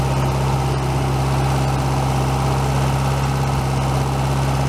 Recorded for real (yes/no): yes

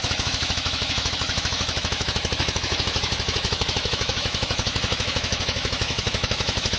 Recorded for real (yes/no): no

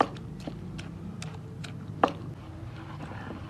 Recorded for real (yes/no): yes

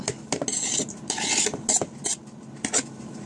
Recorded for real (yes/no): yes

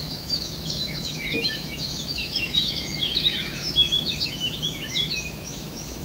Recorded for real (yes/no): no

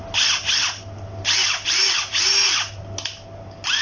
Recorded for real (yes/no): yes